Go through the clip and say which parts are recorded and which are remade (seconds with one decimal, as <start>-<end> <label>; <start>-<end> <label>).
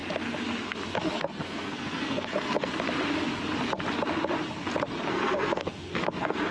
0.0-1.0 recorded; 1.0-2.7 remade; 2.7-5.1 recorded; 5.1-6.5 remade